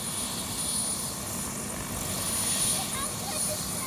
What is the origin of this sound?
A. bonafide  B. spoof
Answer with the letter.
A